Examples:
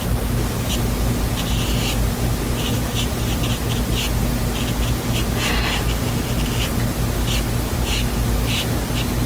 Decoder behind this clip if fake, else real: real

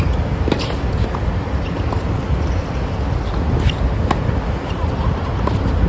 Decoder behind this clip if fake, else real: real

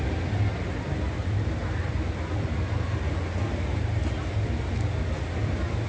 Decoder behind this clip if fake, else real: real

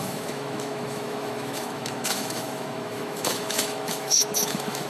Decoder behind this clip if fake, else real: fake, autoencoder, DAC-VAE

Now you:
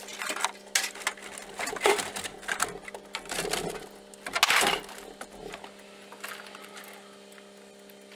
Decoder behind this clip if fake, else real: real